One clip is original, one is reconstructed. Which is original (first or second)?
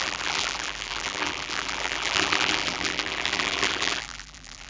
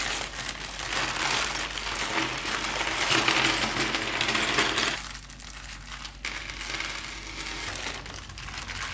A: second